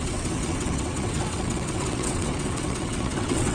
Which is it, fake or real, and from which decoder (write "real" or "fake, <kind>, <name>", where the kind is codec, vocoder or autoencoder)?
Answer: fake, vocoder, WaveNeXt